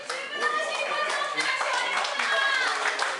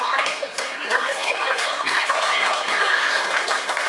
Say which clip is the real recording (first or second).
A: first